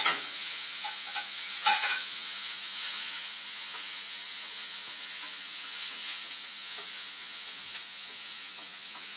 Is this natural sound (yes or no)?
no